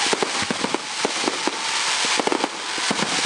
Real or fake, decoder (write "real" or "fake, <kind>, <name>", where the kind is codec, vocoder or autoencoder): real